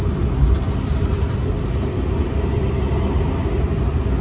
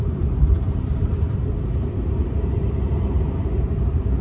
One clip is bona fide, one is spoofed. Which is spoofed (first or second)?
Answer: second